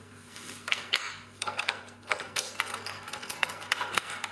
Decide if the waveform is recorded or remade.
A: remade